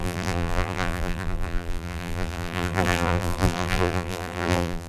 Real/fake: fake